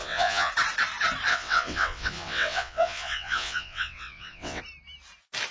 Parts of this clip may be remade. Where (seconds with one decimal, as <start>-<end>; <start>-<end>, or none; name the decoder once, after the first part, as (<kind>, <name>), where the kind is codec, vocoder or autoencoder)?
0.0-0.5 (vocoder, WaveNeXt); 1.3-4.6